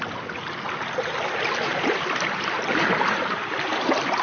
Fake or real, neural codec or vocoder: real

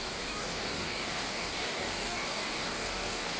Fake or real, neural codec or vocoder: fake, codec, DAC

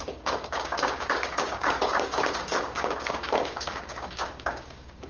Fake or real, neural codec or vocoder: fake, codec, DAC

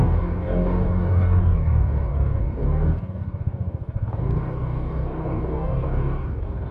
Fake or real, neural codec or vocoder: fake, codec, DAC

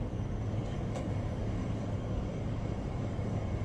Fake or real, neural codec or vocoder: fake, codec, DAC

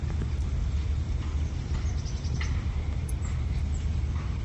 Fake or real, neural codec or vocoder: real